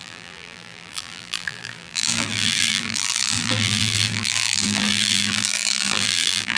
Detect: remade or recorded remade